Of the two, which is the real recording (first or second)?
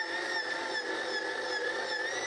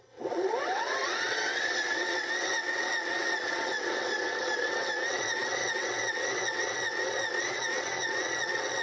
first